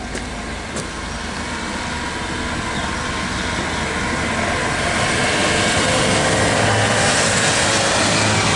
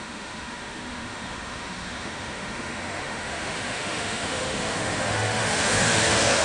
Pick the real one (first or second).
first